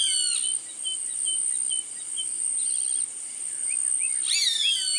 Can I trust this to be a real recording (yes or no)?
yes